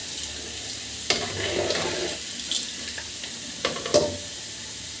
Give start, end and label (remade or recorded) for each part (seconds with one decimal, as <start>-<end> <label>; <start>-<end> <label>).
0.0-5.0 recorded